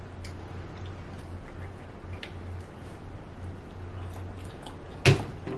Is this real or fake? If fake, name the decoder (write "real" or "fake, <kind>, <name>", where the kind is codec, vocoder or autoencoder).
real